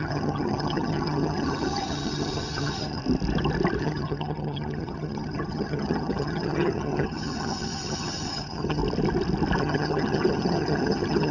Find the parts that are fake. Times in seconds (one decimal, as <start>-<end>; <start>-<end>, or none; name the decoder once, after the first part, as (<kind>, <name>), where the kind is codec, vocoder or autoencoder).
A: 0.0-3.0 (vocoder, HiFi-GAN); 3.8-8.8; 9.6-11.3